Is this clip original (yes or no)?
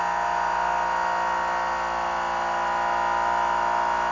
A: yes